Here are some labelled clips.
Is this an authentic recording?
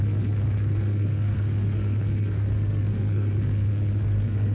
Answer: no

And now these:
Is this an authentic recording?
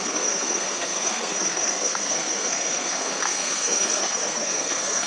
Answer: no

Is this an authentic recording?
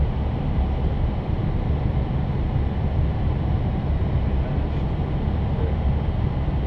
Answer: yes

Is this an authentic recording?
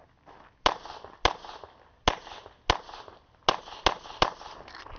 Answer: yes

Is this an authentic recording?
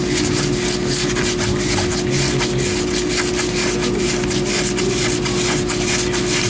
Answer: yes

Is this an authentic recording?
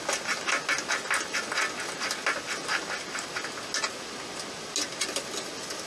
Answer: yes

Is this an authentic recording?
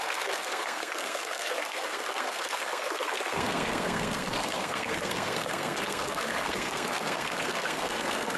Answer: no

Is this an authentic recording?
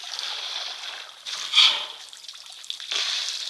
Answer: yes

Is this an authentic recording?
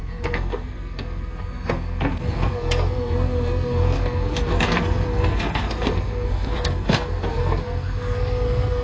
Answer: no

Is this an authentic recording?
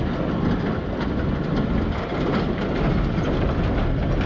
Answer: yes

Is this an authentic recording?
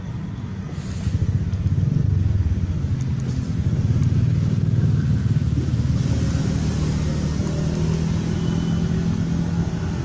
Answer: yes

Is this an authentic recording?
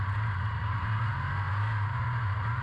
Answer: yes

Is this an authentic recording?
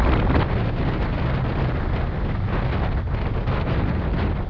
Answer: yes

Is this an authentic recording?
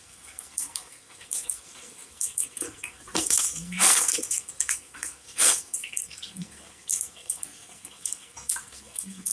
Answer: no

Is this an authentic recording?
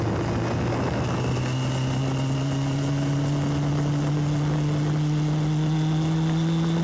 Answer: yes